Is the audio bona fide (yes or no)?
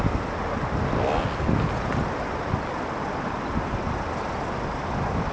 yes